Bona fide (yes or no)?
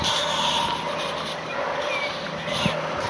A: yes